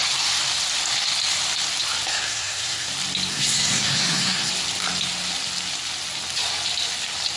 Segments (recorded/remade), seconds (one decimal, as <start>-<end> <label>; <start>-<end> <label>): 0.0-2.1 recorded; 2.1-2.9 remade; 2.9-3.3 recorded; 3.3-4.5 remade; 4.5-7.4 recorded